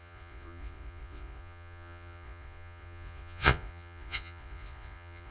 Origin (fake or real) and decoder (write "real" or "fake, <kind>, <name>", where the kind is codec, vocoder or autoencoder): fake, vocoder, Vocos